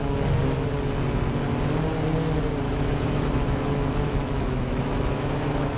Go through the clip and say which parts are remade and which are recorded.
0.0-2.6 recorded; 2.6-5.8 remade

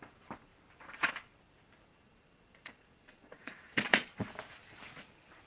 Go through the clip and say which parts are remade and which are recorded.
0.0-1.9 recorded; 1.9-4.2 remade; 4.2-5.5 recorded

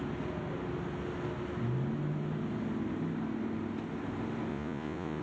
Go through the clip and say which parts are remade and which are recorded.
0.0-4.5 recorded; 4.5-5.2 remade